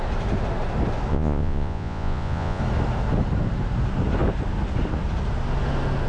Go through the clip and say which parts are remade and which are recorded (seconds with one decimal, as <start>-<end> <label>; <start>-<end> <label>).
0.0-1.1 recorded; 1.1-2.6 remade; 2.6-6.1 recorded